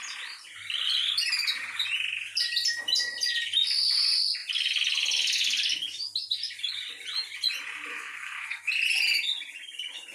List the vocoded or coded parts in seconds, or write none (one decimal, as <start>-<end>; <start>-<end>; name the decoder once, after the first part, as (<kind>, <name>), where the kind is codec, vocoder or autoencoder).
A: 7.9-8.7 (codec, SNAC)